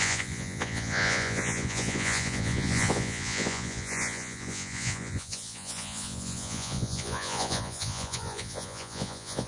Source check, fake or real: fake